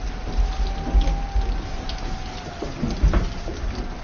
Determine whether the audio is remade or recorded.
recorded